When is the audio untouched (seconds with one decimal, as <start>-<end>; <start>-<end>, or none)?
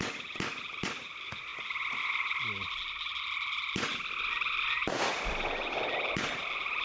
0.0-6.8